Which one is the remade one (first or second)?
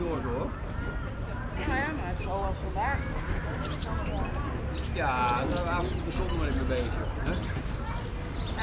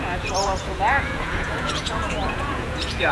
second